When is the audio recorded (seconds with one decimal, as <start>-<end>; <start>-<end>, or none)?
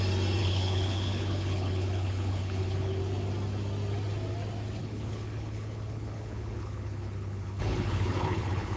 0.0-0.4; 3.0-4.8